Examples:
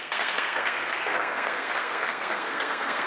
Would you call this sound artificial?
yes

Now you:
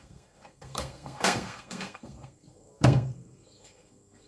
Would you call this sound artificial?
yes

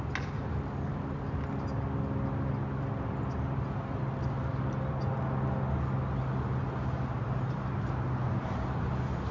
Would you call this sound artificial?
no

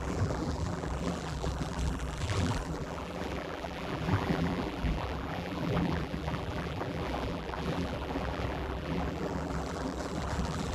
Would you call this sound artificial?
yes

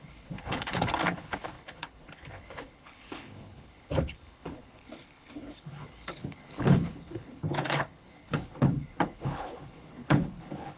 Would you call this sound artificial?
yes